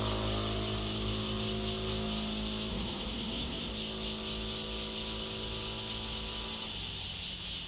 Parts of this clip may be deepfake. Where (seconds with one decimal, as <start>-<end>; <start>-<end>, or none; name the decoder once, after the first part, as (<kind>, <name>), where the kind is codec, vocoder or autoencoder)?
2.7-3.7 (codec, SNAC)